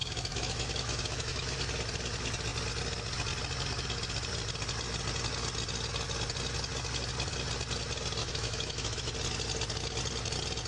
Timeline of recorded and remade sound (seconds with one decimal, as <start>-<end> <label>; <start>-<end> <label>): 0.0-1.6 remade; 1.6-8.2 recorded; 8.2-9.1 remade; 9.1-10.7 recorded